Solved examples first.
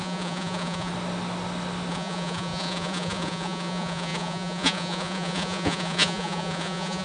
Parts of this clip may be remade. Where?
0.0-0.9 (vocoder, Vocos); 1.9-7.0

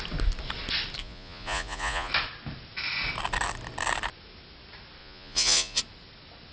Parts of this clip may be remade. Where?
1.0-2.1 (vocoder, Vocos); 5.0-5.8

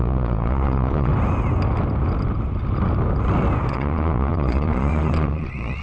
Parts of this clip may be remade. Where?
0.0-1.1 (vocoder, Vocos); 3.7-5.8

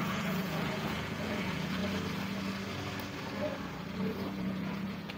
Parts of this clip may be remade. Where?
0.0-1.8 (vocoder, Vocos); 4.4-5.2

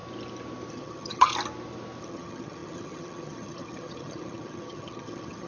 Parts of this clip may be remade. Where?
0.7-1.3 (vocoder, HiFi-GAN); 2.0-5.5

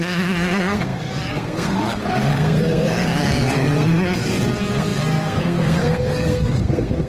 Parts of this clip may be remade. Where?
0.0-7.1 (codec, SNAC)

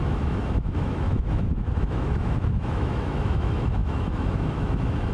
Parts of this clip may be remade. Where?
0.0-5.1 (autoencoder, DAC-VAE)